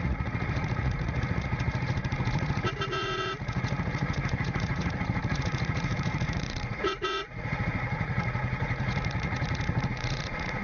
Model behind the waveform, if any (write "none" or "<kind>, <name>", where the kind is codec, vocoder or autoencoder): vocoder, Vocos